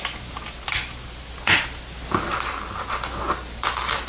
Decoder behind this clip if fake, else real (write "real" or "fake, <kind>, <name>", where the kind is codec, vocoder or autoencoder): real